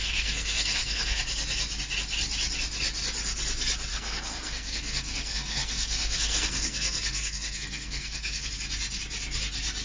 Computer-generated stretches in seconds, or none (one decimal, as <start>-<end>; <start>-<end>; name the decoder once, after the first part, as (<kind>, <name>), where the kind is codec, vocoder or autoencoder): 0.0-1.2 (codec, SNAC); 3.9-8.5